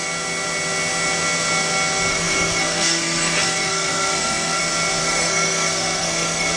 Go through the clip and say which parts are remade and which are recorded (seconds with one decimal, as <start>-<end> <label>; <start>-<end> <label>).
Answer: 0.0-2.1 recorded; 2.1-4.6 remade; 4.6-5.0 recorded; 5.0-6.6 remade